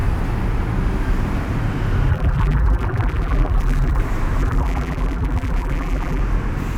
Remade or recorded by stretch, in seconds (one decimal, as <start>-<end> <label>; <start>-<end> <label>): 0.0-2.1 recorded; 2.1-4.0 remade; 4.0-4.4 recorded; 4.4-6.2 remade; 6.2-6.8 recorded